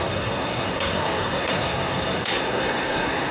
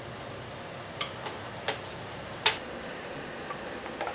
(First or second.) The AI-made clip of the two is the first